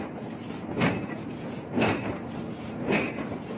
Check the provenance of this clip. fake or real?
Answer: real